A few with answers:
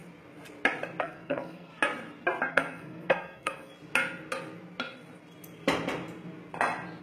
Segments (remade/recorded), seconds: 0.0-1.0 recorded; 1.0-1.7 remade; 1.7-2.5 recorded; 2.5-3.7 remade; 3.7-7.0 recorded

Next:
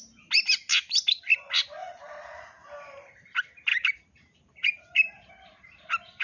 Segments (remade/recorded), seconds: 0.0-1.8 recorded; 1.8-2.4 remade; 2.4-3.7 recorded; 3.7-5.3 remade; 5.3-6.2 recorded